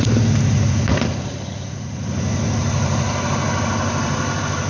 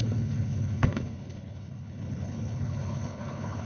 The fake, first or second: second